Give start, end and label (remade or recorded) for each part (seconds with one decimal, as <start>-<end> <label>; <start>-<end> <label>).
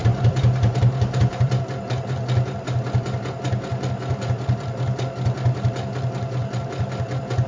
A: 0.0-1.5 remade; 1.5-7.5 recorded